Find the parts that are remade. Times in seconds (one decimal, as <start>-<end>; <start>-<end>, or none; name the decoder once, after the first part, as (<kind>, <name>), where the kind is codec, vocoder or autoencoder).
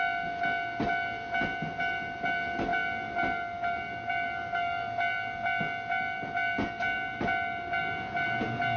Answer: none